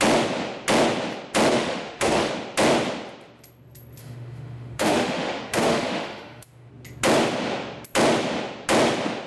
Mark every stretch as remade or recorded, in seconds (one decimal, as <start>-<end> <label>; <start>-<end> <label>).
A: 0.0-1.5 recorded; 1.5-2.3 remade; 2.3-4.0 recorded; 4.0-6.7 remade; 6.7-9.3 recorded